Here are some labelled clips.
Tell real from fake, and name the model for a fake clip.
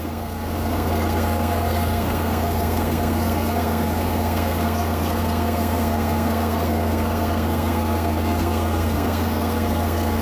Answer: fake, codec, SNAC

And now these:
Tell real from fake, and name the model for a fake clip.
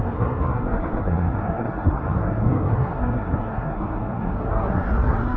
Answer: fake, codec, SNAC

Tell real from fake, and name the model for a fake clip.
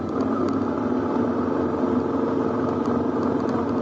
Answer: real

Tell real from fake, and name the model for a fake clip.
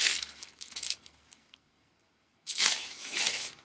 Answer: fake, codec, SNAC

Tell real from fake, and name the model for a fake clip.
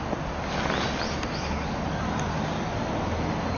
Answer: real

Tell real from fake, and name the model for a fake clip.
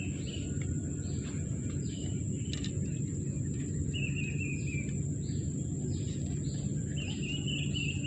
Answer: real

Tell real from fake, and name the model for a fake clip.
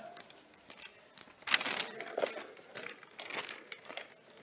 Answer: real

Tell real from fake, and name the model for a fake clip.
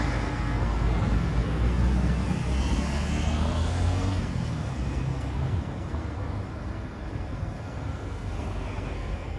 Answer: fake, codec, SNAC